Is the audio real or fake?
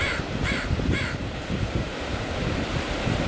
fake